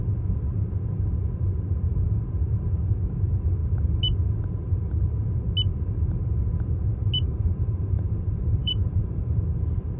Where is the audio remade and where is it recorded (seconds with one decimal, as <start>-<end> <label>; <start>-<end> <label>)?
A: 0.0-7.3 recorded; 7.3-9.4 remade; 9.4-10.0 recorded